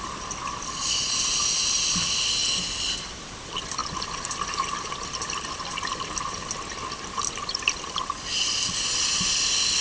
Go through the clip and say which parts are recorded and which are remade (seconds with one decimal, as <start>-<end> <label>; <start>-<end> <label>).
0.0-9.8 recorded